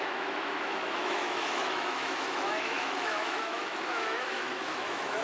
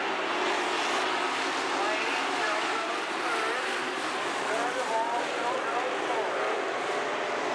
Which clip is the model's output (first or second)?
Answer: first